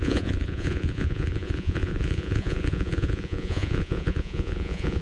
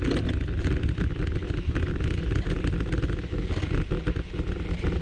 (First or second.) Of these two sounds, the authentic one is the second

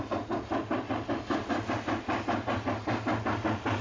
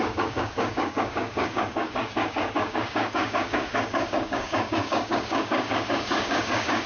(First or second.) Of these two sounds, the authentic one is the first